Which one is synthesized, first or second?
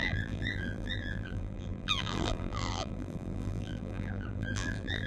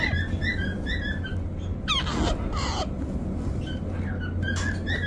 first